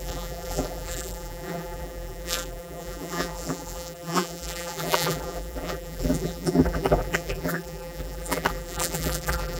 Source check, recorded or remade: remade